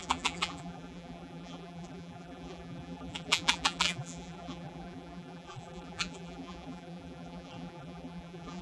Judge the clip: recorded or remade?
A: remade